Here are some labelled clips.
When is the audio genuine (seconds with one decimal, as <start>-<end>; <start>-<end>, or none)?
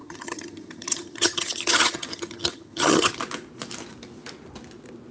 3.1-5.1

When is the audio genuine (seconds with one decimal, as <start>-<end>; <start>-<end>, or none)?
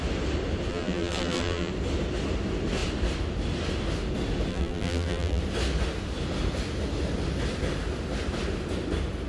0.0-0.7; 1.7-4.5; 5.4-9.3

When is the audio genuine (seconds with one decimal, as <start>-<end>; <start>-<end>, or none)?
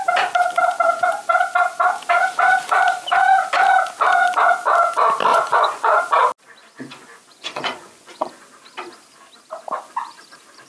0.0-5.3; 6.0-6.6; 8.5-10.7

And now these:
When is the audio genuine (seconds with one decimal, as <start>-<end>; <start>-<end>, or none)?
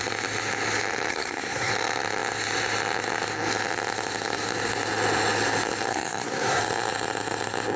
0.0-1.1; 1.7-5.9; 6.6-7.8